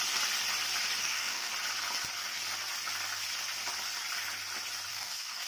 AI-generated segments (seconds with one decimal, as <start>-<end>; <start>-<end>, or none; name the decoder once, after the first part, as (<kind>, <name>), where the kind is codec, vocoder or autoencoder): 1.0-1.5 (codec, DAC); 4.9-5.5